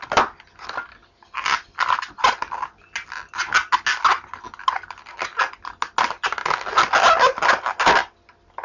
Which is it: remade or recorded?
recorded